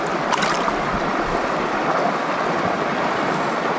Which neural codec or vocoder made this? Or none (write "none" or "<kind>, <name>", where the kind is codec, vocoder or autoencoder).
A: none